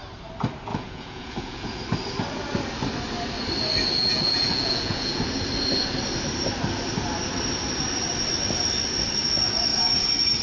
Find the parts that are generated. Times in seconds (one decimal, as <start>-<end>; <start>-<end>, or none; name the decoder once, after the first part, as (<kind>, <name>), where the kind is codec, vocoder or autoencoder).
0.7-1.8 (vocoder, Vocos); 4.0-5.2

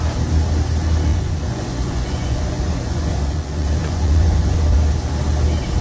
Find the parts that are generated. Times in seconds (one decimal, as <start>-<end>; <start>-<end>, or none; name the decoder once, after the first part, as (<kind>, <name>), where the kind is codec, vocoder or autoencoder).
1.1-4.6 (vocoder, Vocos)

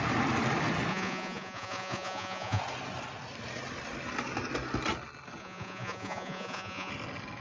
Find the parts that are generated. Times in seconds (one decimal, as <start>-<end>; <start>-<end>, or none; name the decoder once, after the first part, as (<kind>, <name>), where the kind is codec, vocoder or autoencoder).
0.9-2.6 (vocoder, Vocos); 5.4-6.9

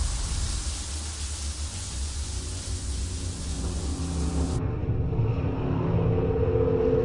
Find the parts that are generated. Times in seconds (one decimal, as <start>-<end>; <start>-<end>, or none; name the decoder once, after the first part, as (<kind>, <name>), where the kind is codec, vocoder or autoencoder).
1.7-4.0 (vocoder, Vocos)

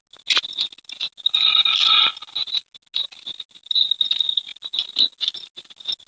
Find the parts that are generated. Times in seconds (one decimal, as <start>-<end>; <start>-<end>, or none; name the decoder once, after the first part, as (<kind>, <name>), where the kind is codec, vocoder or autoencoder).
none

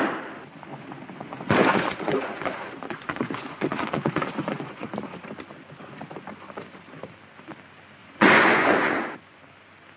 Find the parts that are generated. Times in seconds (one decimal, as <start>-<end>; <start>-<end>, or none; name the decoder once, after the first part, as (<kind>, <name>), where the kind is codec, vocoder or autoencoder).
0.7-5.2 (vocoder, Vocos); 8.0-9.4

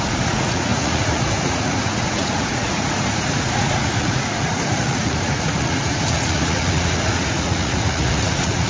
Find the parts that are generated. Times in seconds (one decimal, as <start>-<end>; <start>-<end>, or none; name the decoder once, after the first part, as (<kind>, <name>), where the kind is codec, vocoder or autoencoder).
0.0-8.7 (vocoder, Vocos)

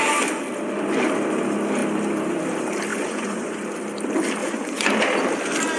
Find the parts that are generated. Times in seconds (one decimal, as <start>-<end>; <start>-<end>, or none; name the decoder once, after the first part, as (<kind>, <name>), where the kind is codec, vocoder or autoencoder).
2.9-3.6 (vocoder, Vocos); 4.4-4.9